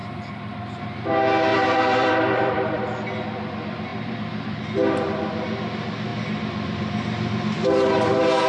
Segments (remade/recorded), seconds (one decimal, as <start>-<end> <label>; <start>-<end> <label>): 0.0-1.5 recorded; 1.5-2.8 remade; 2.8-3.9 recorded; 3.9-4.6 remade; 4.6-8.5 recorded